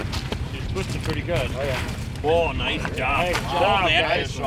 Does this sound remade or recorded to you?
recorded